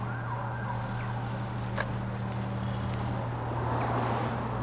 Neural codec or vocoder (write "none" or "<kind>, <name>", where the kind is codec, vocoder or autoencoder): none